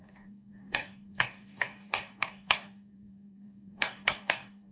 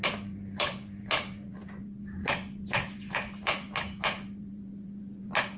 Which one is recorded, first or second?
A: second